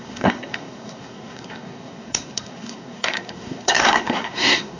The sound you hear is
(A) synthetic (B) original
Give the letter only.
A